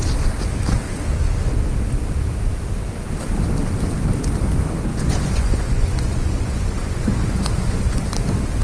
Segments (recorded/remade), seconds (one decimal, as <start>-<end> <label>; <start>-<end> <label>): 0.0-4.9 recorded; 4.9-8.1 remade; 8.1-8.6 recorded